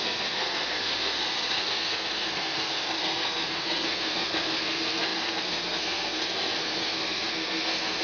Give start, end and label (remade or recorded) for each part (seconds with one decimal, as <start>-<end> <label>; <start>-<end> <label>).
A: 0.0-8.0 remade